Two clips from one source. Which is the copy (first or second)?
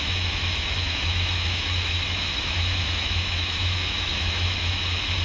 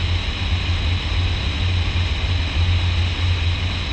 first